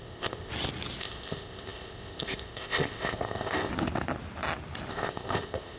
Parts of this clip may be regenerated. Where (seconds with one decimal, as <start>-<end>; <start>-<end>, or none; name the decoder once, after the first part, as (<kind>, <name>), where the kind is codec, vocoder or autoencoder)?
0.0-0.5 (codec, ZipCodec); 1.0-3.7; 4.9-5.8